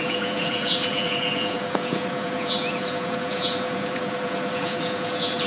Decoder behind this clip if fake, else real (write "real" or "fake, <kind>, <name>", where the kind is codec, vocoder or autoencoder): fake, vocoder, Vocos